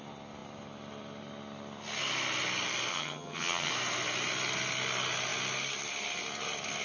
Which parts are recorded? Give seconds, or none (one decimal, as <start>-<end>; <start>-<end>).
0.0-2.9; 3.7-6.8